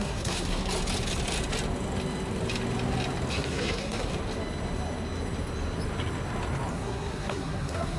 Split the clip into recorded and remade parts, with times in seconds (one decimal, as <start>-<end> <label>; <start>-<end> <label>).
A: 0.0-0.6 remade; 0.6-3.3 recorded; 3.3-4.1 remade; 4.1-6.7 recorded; 6.7-8.0 remade